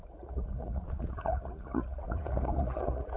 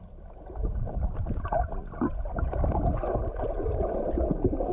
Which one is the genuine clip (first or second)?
second